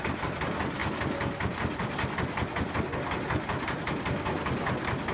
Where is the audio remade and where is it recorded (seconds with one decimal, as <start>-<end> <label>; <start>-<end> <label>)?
0.0-5.1 recorded